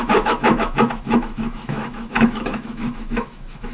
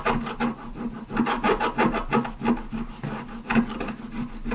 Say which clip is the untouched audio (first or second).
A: second